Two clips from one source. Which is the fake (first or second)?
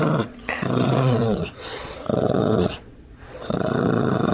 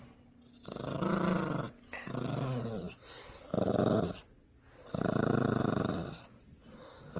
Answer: first